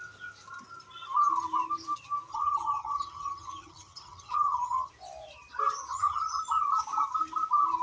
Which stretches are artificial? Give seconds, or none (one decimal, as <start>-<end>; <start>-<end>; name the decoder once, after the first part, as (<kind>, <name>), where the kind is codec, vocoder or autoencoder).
2.3-4.9 (vocoder, HiFi-GAN); 5.9-6.4